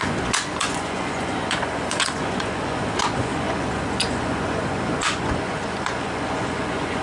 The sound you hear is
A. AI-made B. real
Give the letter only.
A